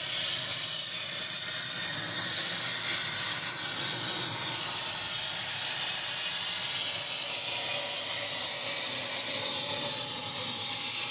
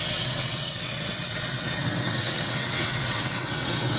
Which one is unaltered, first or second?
first